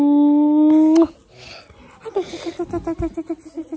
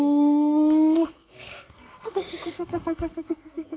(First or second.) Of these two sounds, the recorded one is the first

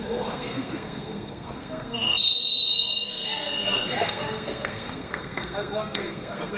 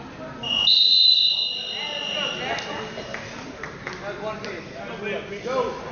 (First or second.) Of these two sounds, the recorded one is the second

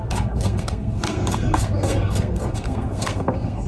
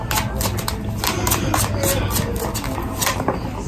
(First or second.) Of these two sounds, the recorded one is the second